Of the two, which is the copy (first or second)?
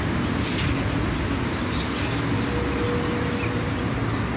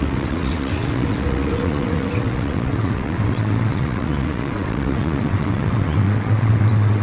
second